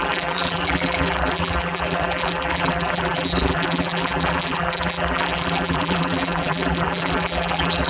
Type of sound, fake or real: fake